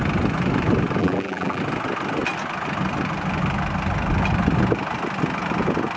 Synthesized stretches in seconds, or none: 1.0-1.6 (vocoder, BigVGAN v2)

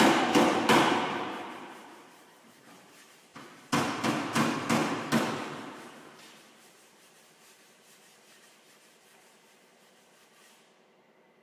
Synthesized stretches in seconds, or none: 0.0-11.4 (vocoder, BigVGAN v2)

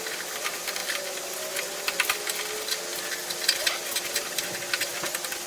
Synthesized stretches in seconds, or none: 2.9-3.7 (vocoder, BigVGAN v2)

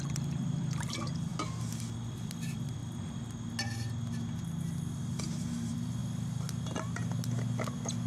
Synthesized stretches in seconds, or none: 0.0-1.3 (vocoder, BigVGAN v2); 1.9-2.8; 5.3-6.0

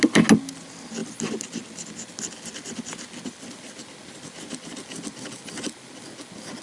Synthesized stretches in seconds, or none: none

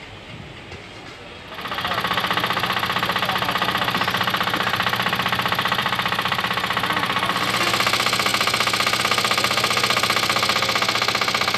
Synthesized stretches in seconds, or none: 5.8-6.4 (vocoder, BigVGAN v2)

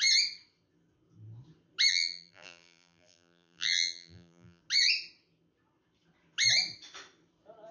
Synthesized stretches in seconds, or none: 1.9-4.6 (vocoder, BigVGAN v2)

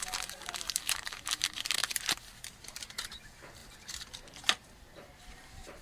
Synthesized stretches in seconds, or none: 0.0-1.8 (vocoder, BigVGAN v2); 2.5-5.8